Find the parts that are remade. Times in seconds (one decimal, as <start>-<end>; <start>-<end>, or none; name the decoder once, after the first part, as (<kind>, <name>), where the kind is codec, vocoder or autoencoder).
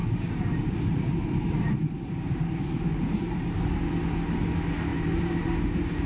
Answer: 0.0-3.7 (vocoder, BigVGAN v2); 4.9-6.1